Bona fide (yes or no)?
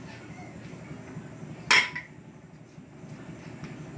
yes